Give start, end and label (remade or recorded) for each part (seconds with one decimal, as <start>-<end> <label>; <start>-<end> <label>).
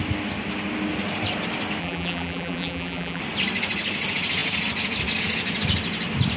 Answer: 0.0-1.8 recorded; 1.8-3.2 remade; 3.2-6.4 recorded